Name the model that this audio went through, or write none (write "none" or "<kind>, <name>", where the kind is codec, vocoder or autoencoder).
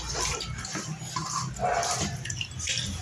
none